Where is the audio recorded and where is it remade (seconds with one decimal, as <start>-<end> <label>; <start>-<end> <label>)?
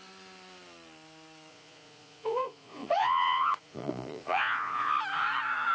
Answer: 0.0-1.5 recorded; 1.5-4.9 remade; 4.9-5.7 recorded